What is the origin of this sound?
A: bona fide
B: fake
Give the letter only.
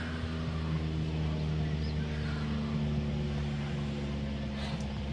A